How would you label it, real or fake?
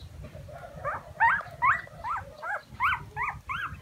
real